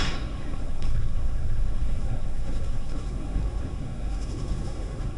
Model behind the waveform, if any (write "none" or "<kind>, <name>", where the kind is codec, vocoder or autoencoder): codec, SNAC